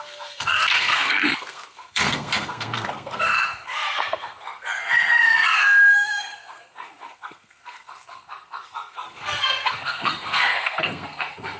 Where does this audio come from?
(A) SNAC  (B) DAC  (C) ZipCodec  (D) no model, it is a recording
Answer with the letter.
A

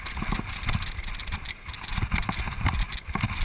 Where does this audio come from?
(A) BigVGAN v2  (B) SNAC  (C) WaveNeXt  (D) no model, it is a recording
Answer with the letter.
D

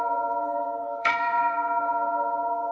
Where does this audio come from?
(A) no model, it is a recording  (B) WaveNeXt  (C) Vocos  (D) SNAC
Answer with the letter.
D